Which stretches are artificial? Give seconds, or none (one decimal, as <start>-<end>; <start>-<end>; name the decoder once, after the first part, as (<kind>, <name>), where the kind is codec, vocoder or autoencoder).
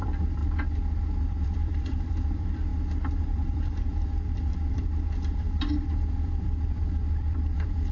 0.0-0.4 (vocoder, BigVGAN v2); 1.2-2.7; 3.2-7.9